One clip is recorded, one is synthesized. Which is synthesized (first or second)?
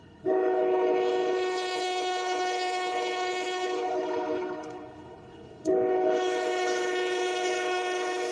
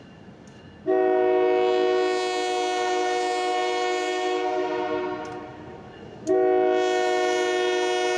first